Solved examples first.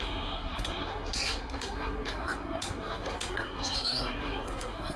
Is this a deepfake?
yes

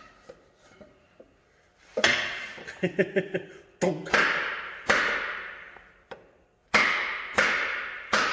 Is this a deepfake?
no